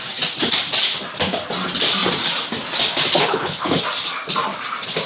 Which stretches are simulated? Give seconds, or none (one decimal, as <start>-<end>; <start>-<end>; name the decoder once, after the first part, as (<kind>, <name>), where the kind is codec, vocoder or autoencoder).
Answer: 3.2-3.8 (codec, HILCodec)